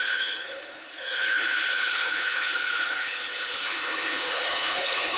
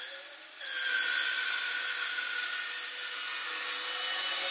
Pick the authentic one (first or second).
second